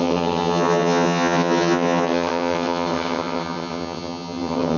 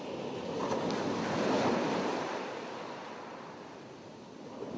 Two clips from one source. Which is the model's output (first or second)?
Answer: first